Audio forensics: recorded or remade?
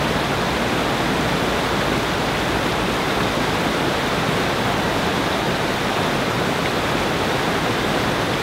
recorded